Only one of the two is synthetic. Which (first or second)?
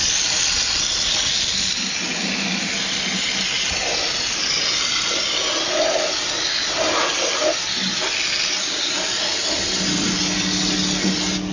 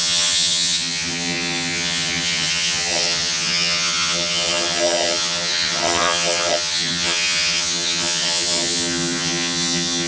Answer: second